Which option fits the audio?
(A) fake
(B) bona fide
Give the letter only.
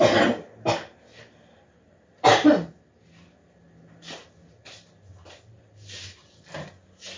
B